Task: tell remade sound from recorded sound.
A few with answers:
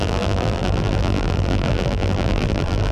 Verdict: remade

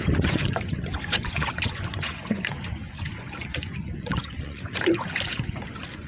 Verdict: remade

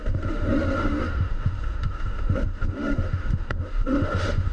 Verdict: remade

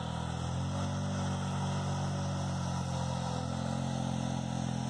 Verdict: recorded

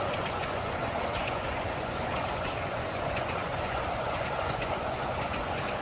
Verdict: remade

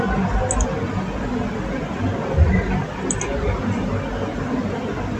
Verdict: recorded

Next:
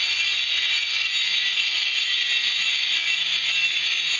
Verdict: recorded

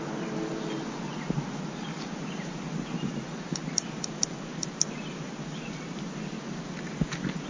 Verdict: recorded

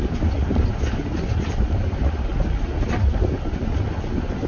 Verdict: recorded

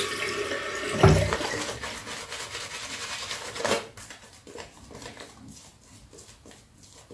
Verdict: recorded